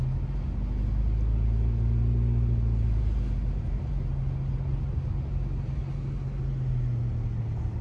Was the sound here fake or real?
real